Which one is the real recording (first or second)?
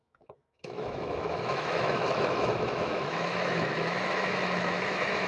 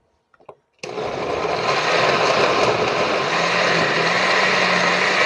second